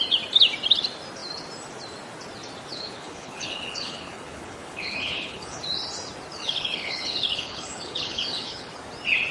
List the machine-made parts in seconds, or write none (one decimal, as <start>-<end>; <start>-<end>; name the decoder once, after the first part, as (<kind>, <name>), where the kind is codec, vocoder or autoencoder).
2.7-5.6 (codec, HILCodec); 6.3-8.7